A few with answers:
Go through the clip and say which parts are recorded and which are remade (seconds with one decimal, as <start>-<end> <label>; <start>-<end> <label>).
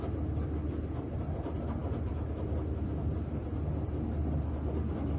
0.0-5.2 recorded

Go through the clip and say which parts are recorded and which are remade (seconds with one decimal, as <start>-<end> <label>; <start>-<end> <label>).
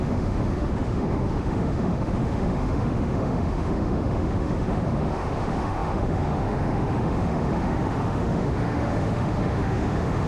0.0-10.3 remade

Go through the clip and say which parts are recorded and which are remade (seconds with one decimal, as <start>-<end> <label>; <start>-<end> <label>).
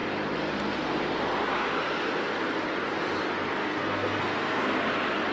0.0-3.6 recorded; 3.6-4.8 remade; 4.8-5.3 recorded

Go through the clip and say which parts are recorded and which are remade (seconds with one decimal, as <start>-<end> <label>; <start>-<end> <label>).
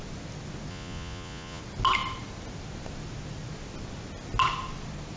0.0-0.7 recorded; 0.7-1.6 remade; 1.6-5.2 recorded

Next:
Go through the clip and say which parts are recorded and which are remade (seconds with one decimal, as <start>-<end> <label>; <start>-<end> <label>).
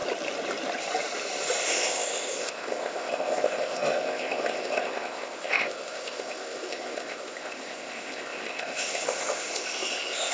0.0-1.6 recorded; 1.6-10.3 remade